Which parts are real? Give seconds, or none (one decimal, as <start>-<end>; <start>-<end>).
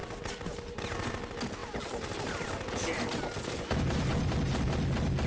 0.0-5.3